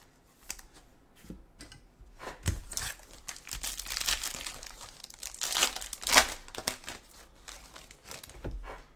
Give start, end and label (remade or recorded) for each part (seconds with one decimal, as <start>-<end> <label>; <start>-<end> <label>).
0.0-9.0 recorded